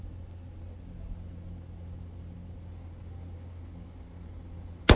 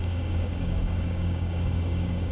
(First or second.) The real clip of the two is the first